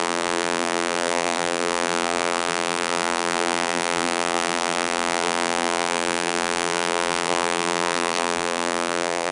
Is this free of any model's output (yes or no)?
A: no